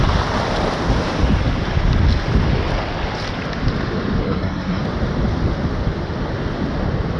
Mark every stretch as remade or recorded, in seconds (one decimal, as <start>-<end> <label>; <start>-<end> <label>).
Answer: 0.0-4.2 recorded; 4.2-4.8 remade; 4.8-7.2 recorded